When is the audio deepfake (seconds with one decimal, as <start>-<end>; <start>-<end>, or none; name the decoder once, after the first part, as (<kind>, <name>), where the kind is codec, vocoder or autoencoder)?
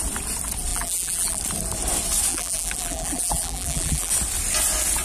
0.7-1.4 (vocoder, BigVGAN v2); 2.3-4.1